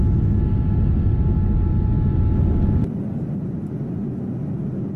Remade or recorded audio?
recorded